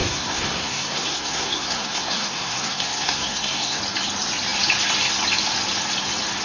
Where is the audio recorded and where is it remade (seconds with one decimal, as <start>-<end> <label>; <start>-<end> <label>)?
0.0-3.8 remade; 3.8-6.4 recorded